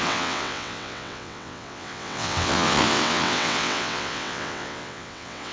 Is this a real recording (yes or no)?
no